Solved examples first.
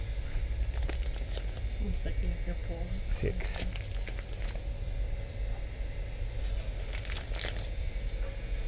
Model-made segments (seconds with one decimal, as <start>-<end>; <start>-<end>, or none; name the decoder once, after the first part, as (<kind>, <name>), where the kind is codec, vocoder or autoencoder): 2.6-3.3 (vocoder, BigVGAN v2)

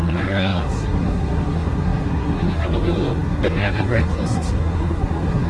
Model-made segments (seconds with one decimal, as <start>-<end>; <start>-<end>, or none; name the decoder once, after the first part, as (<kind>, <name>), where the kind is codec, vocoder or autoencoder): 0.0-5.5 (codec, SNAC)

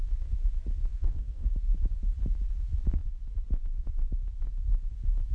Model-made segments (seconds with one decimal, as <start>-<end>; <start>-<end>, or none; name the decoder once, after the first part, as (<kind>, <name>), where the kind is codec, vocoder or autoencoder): 0.9-1.5 (codec, SNAC)